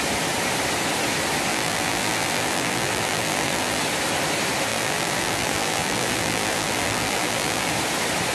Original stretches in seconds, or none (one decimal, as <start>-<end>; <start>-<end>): 0.0-1.5; 3.8-4.7; 7.7-8.3